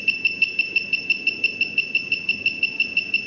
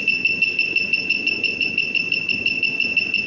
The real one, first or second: first